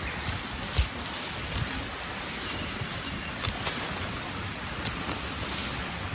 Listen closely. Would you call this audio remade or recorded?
recorded